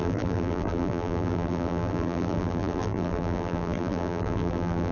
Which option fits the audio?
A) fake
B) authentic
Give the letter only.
A